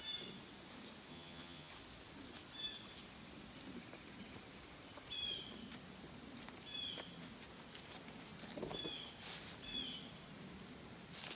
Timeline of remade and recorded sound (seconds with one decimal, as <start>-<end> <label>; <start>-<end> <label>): 0.0-1.1 recorded; 1.1-1.7 remade; 1.7-11.4 recorded